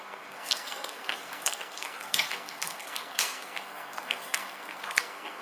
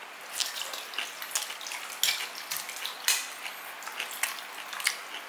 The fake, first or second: first